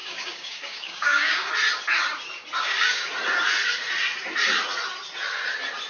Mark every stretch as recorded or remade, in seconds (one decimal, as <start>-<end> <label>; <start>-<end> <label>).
0.0-1.5 remade; 1.5-2.6 recorded; 2.6-3.1 remade; 3.1-5.9 recorded